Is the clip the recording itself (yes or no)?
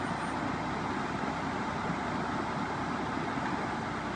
yes